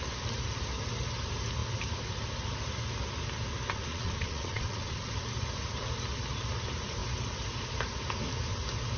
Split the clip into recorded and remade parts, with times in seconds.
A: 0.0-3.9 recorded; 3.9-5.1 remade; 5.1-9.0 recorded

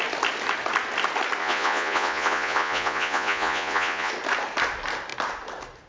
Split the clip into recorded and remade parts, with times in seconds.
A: 0.0-1.4 recorded; 1.4-4.1 remade; 4.1-5.9 recorded

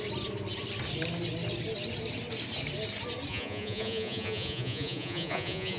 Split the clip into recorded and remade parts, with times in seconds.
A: 0.0-3.3 recorded; 3.3-5.8 remade

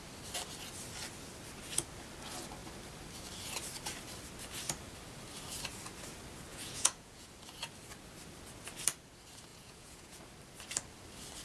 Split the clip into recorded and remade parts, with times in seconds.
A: 0.0-6.5 recorded; 6.5-7.3 remade; 7.3-9.5 recorded; 9.5-10.2 remade; 10.2-11.4 recorded

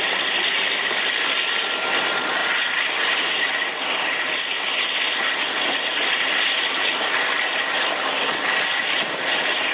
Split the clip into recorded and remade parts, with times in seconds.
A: 0.0-9.7 recorded

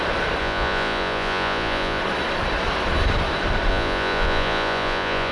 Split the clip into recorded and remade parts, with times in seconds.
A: 0.0-0.4 recorded; 0.4-2.0 remade; 2.0-3.7 recorded; 3.7-5.3 remade